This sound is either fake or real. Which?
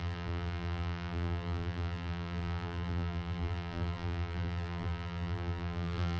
fake